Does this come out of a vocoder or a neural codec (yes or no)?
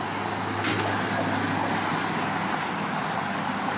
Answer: no